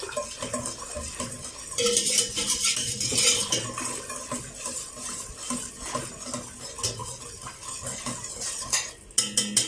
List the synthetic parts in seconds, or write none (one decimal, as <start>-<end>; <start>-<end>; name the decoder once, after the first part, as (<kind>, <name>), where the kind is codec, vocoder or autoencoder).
7.0-7.6 (vocoder, BigVGAN v2)